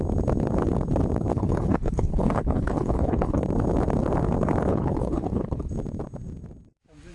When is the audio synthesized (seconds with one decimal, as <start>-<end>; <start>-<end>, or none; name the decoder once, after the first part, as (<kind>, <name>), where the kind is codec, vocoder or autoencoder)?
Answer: 1.3-3.4 (codec, HILCodec); 4.7-5.7

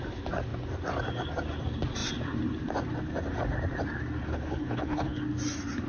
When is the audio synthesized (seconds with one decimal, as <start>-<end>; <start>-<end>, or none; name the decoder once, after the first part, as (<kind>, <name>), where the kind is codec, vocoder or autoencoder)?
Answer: 4.3-5.2 (codec, HILCodec)

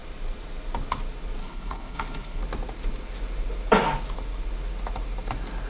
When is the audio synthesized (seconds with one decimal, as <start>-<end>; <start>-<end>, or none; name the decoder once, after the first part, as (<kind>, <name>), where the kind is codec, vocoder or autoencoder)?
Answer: 1.4-2.4 (codec, HILCodec)

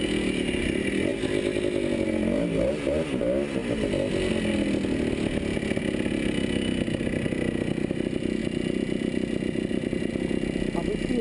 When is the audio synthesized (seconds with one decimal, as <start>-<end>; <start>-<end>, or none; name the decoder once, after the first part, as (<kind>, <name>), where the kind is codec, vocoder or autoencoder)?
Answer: none